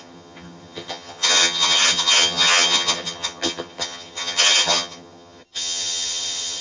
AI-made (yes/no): yes